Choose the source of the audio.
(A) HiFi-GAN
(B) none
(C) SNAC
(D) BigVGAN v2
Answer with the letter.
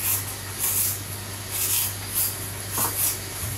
B